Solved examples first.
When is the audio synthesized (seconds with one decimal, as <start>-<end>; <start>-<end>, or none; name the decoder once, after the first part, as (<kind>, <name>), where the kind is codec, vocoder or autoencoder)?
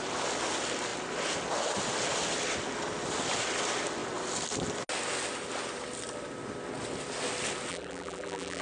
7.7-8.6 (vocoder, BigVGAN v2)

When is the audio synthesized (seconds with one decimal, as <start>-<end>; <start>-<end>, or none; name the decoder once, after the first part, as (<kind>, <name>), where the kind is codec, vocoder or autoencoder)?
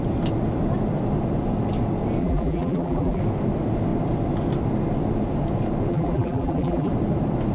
2.2-3.2 (vocoder, BigVGAN v2); 5.9-6.9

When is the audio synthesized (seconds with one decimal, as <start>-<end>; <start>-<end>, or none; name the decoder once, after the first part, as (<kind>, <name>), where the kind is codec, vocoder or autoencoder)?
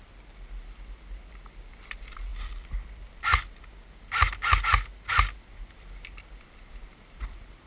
none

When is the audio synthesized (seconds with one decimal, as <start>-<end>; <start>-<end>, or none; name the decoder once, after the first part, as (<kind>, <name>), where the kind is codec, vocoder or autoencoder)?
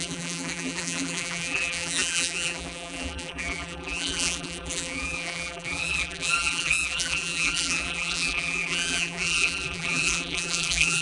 0.0-11.0 (vocoder, BigVGAN v2)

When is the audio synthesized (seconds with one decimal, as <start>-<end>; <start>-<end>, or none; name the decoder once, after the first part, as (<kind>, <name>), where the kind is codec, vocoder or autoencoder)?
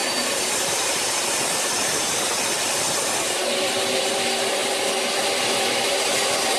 0.0-6.6 (vocoder, BigVGAN v2)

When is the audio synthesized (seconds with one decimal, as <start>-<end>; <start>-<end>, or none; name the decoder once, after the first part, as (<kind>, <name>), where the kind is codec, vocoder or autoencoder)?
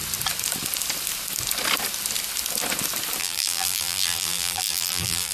3.2-5.3 (vocoder, BigVGAN v2)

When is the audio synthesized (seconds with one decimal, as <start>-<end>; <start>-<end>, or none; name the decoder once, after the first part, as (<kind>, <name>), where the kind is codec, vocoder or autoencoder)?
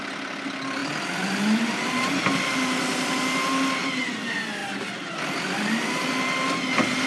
0.8-2.2 (vocoder, BigVGAN v2)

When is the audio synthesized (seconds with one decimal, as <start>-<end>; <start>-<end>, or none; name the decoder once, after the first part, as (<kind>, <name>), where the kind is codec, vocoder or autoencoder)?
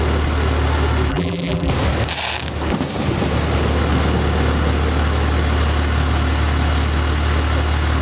1.1-1.7 (vocoder, BigVGAN v2)